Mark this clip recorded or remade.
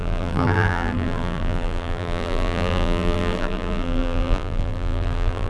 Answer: remade